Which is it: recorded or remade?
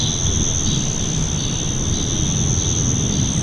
recorded